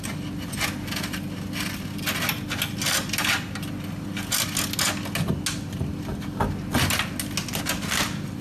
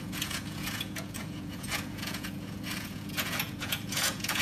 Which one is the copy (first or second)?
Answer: second